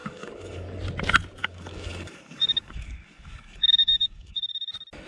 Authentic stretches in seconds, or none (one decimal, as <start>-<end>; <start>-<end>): 0.8-1.4; 4.5-5.1